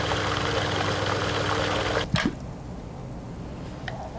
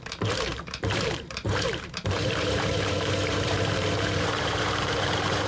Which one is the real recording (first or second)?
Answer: first